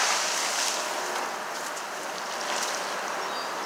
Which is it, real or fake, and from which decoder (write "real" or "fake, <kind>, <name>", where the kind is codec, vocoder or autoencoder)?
real